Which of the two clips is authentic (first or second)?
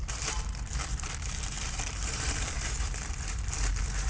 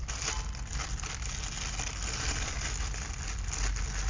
second